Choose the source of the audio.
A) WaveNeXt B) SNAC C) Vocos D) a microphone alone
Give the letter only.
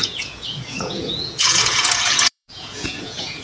C